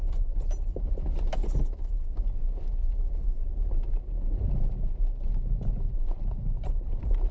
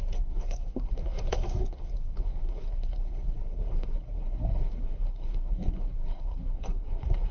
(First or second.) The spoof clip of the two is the second